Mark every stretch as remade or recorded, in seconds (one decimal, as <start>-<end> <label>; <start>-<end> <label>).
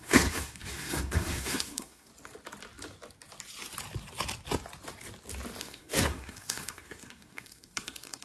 0.0-2.1 remade; 2.1-5.6 recorded; 5.6-8.2 remade